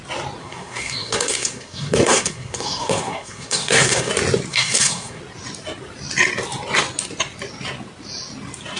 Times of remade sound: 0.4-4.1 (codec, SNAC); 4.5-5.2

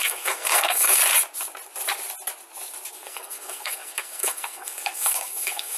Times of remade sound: 0.0-1.0 (codec, SNAC); 2.9-5.8